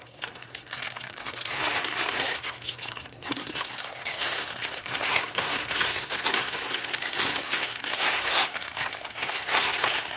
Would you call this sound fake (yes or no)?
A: yes